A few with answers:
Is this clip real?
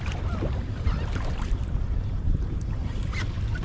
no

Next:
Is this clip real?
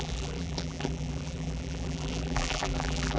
no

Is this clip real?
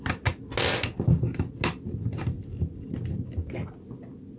yes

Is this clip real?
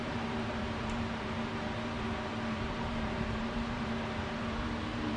no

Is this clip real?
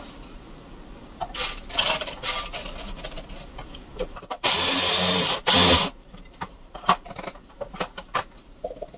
no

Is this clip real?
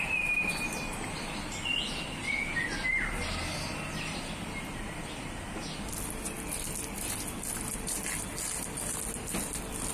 yes